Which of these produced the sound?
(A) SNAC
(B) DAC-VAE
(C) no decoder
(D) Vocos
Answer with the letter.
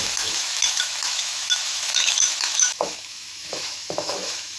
B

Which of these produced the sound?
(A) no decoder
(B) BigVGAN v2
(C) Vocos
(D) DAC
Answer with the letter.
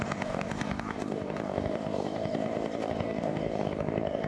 D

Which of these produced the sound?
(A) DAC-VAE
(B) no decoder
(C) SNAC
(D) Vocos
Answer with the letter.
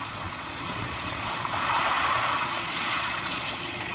D